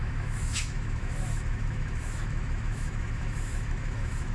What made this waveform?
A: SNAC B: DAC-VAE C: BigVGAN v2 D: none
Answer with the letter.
B